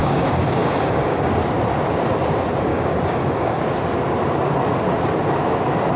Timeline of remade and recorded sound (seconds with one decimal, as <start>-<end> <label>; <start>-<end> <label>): 0.0-1.3 remade; 1.3-2.7 recorded; 2.7-3.6 remade; 3.6-6.0 recorded